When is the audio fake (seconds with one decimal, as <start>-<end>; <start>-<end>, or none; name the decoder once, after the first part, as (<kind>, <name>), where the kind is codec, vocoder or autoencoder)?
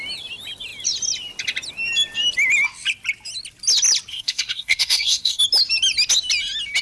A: 4.1-5.4 (codec, SNAC)